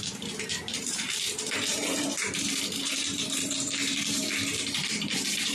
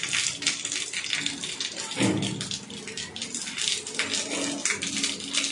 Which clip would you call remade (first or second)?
first